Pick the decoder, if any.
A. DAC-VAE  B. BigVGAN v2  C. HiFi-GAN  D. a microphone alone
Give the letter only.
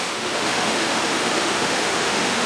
A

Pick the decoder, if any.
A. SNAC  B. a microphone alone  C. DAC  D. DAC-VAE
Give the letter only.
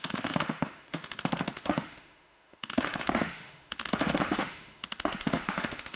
D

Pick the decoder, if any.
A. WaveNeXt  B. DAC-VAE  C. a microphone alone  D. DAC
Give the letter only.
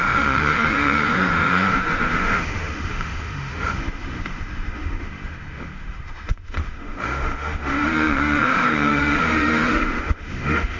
B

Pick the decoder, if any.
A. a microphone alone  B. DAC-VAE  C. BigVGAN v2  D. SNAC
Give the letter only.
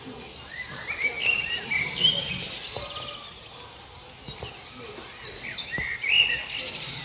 C